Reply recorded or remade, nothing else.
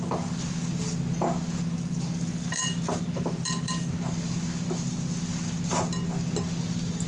recorded